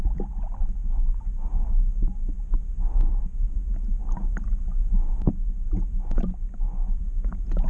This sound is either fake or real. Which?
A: real